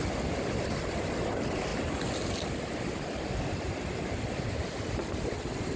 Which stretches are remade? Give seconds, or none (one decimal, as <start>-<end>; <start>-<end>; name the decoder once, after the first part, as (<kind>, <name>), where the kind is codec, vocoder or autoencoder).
none